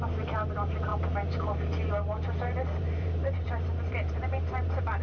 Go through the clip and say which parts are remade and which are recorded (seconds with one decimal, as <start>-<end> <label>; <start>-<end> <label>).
0.0-5.0 remade